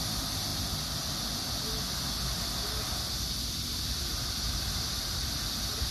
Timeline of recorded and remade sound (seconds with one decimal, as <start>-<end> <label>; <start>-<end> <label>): 0.0-5.9 recorded